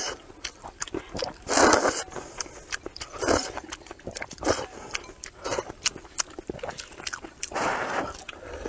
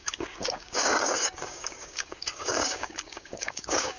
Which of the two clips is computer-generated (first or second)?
second